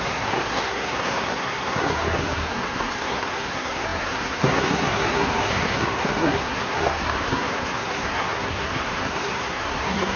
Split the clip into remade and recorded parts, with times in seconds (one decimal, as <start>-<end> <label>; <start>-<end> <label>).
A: 0.0-10.2 remade